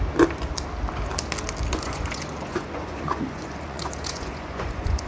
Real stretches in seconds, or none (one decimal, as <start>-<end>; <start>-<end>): 0.0-1.7